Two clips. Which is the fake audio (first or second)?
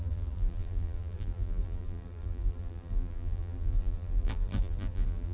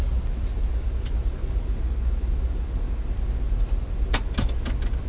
first